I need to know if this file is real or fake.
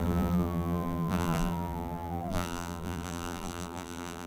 fake